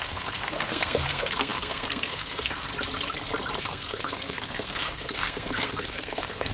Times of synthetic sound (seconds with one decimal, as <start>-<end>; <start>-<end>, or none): 0.0-2.7; 3.6-6.5